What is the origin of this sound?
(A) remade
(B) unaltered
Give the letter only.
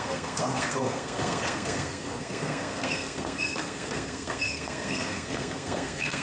A